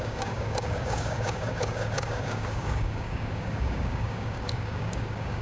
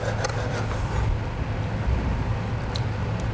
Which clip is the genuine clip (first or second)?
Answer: second